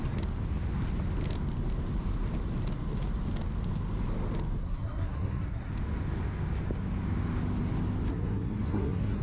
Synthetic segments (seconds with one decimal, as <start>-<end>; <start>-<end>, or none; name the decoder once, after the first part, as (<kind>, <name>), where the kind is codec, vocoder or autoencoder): 4.6-5.7 (codec, SNAC); 8.1-9.2